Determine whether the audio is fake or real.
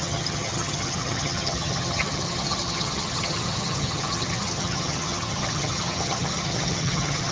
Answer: fake